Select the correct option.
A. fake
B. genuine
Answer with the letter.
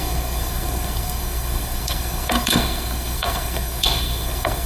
A